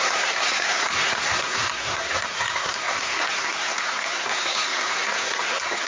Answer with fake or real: fake